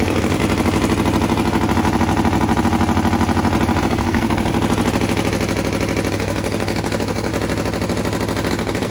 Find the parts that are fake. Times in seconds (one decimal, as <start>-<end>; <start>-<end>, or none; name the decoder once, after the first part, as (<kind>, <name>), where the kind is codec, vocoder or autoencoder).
0.0-0.4 (codec, SNAC); 3.8-4.5; 6.1-7.3; 8.5-8.9